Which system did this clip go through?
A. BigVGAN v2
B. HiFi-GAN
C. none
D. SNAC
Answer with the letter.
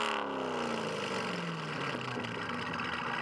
C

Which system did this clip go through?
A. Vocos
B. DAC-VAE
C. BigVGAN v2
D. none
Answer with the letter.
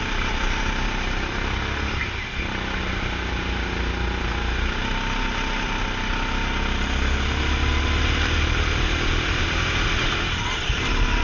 D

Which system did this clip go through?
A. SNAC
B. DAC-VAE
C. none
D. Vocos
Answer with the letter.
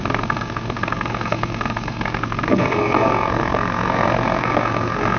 A